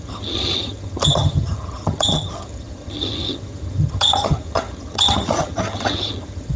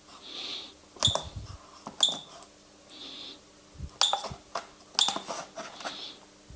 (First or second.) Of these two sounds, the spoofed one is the first